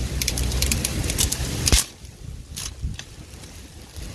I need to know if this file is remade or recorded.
remade